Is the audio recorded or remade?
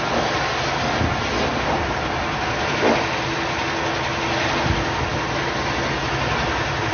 recorded